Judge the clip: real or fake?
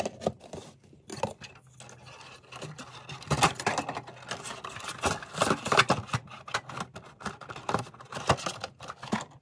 real